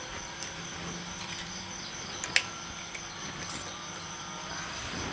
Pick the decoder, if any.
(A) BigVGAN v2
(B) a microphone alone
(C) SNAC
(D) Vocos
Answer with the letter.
B